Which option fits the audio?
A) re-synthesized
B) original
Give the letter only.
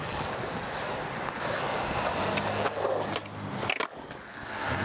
B